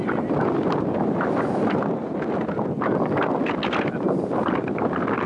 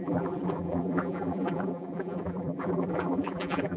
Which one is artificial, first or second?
second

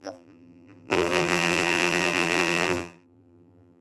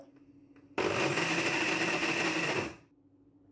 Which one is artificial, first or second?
first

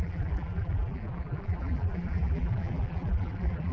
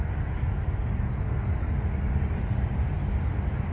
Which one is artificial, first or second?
first